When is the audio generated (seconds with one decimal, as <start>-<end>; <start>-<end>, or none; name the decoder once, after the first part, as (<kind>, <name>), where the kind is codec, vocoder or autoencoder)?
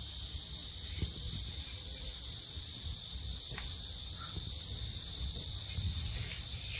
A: none